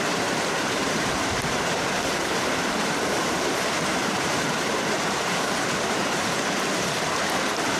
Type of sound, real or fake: fake